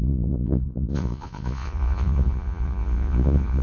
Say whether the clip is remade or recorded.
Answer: remade